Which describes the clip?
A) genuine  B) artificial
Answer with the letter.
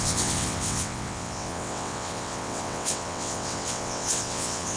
B